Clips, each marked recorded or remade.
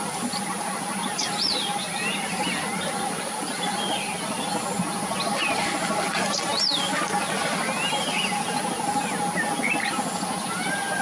recorded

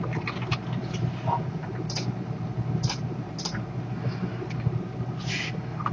recorded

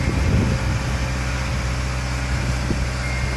recorded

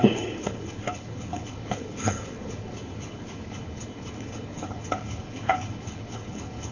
remade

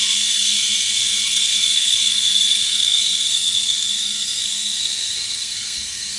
remade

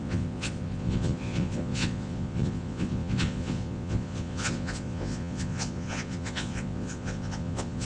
remade